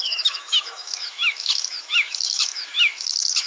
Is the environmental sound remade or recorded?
remade